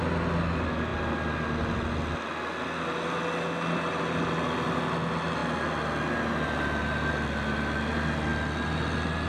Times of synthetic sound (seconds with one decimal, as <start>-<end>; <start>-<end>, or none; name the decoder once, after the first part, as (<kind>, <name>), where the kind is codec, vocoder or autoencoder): none